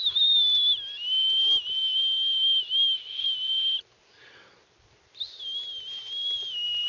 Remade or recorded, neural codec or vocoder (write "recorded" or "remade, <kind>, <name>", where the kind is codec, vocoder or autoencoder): recorded